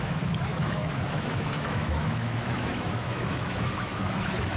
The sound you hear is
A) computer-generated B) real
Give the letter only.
A